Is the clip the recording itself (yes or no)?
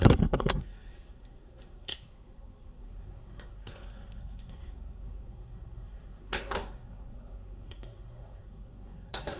no